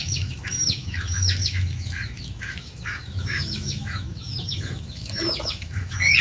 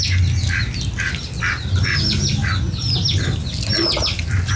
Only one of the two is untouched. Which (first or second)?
second